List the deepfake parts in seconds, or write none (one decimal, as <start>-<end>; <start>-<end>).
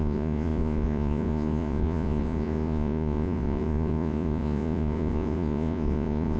0.0-6.4